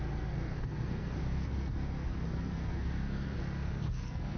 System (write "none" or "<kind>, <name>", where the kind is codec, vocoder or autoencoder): codec, SNAC